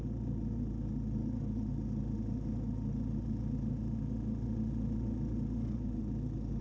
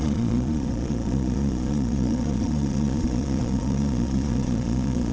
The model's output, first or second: second